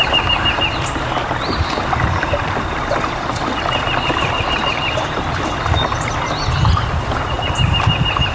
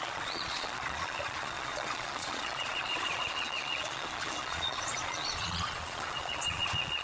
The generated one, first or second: second